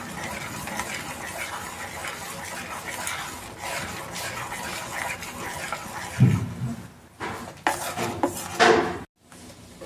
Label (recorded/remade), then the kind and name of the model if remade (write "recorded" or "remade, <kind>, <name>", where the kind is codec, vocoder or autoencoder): recorded